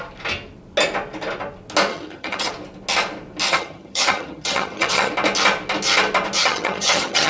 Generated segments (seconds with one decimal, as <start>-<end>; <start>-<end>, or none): 1.9-2.5; 3.5-5.1; 6.4-7.3